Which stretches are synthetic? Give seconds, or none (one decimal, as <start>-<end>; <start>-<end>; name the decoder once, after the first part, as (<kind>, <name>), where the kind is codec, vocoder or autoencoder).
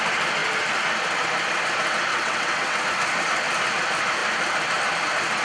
2.1-2.8 (vocoder, WaveNeXt)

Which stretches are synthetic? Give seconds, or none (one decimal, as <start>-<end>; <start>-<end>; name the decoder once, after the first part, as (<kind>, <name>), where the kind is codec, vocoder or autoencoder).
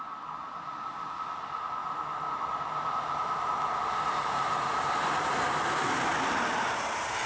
none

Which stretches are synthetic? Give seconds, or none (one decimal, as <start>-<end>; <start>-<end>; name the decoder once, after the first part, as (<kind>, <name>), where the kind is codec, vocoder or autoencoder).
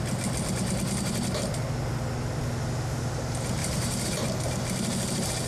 3.6-4.2 (vocoder, BigVGAN v2)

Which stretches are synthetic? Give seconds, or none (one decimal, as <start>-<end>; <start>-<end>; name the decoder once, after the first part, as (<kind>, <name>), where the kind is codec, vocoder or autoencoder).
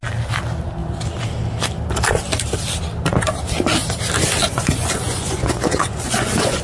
4.4-6.6 (vocoder, Vocos)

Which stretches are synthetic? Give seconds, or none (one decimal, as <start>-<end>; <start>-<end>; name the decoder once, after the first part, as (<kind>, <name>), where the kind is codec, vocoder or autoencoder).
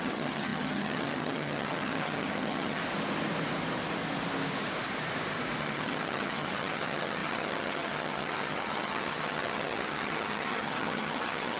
0.0-2.8 (vocoder, HiFi-GAN); 5.6-11.6